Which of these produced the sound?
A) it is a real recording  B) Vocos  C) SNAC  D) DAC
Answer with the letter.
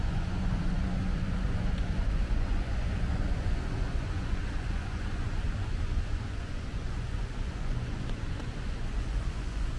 B